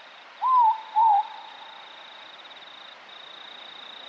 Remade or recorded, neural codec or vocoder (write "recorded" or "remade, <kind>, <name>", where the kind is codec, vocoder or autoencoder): recorded